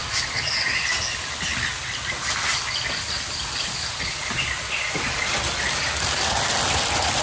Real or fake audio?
real